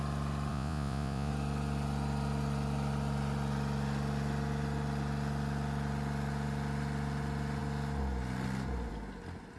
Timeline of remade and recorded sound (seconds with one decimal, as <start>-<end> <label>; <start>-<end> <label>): 0.0-0.5 recorded; 0.5-1.3 remade; 1.3-9.6 recorded